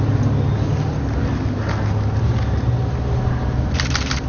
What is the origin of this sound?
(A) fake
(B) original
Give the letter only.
B